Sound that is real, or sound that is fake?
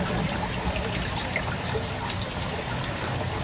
fake